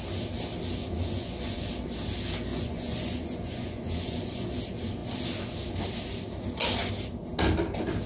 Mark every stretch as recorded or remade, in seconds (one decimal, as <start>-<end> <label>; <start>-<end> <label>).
0.0-0.8 recorded; 0.8-1.7 remade; 1.7-2.5 recorded; 2.5-4.6 remade; 4.6-8.1 recorded